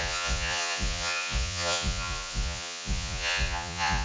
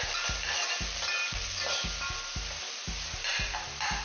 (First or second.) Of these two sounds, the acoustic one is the second